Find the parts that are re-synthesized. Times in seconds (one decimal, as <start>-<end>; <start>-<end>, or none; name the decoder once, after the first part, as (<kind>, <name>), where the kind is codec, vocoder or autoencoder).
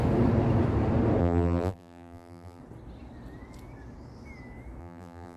1.2-2.6 (vocoder, BigVGAN v2); 4.8-5.4